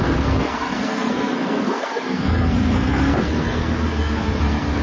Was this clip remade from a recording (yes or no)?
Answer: yes